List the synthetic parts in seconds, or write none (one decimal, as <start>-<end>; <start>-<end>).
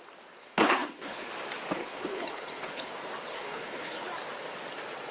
0.4-1.3; 1.8-2.9; 3.3-4.0